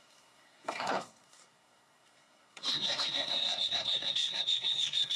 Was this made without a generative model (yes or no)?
no